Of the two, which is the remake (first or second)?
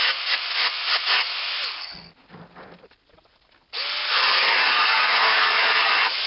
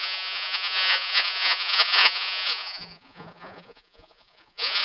second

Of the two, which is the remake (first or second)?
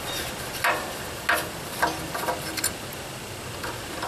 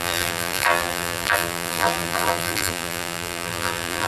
second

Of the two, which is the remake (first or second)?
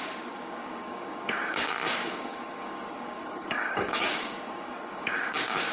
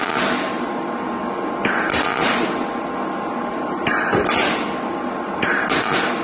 first